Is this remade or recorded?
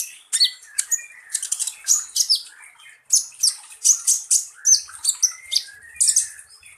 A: recorded